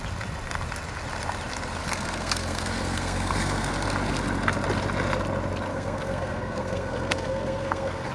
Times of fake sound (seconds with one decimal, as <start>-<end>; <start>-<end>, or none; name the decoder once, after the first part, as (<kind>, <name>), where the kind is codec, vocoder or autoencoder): 1.8-3.7 (codec, SNAC); 5.7-8.1

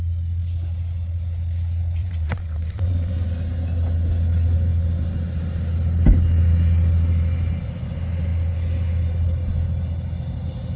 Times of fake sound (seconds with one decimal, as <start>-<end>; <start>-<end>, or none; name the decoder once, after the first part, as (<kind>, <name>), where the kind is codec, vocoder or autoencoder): 2.0-3.1 (vocoder, WaveNeXt)

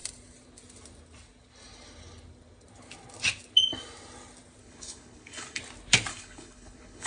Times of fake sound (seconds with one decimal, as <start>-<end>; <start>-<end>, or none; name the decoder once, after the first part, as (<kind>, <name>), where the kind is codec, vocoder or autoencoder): 4.6-5.6 (codec, HILCodec); 6.1-7.1

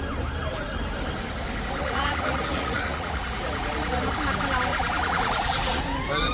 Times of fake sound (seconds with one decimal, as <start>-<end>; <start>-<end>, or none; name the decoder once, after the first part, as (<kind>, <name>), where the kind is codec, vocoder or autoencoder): 1.8-4.0 (vocoder, Vocos); 4.7-5.8

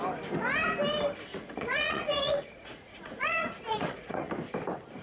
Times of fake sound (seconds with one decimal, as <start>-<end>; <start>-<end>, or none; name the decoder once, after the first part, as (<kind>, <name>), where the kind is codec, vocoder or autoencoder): 1.3-4.3 (vocoder, Vocos)

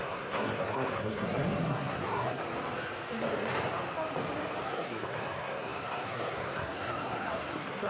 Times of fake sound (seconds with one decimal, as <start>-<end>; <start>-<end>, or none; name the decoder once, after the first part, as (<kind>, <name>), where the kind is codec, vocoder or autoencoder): 0.0-2.4 (codec, SNAC); 4.6-7.9

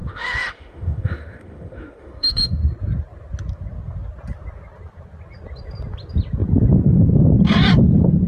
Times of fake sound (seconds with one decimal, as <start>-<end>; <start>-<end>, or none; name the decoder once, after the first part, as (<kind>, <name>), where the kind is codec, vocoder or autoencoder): 0.0-2.6 (autoencoder, DAC-VAE)